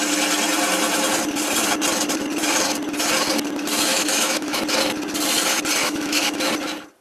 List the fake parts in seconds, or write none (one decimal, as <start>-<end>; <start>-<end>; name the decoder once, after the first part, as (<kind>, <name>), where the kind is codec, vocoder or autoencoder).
3.9-4.6 (autoencoder, DAC-VAE); 5.8-6.5